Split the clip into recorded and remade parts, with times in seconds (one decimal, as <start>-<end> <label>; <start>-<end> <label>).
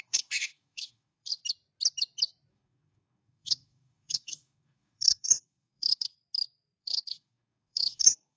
0.0-1.3 remade; 1.3-2.5 recorded; 2.5-6.1 remade; 6.1-6.8 recorded; 6.8-8.4 remade